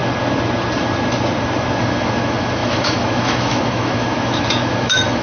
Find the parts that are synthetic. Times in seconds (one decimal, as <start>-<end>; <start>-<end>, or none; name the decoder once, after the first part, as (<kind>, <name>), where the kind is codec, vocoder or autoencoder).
1.8-5.2 (autoencoder, DAC-VAE)